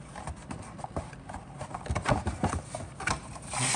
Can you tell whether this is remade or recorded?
recorded